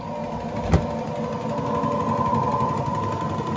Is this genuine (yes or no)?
yes